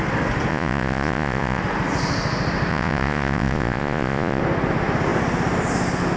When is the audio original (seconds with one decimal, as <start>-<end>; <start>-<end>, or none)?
0.0-0.5; 1.6-2.7; 4.4-6.2